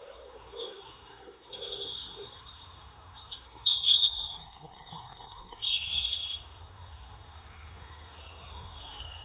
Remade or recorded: remade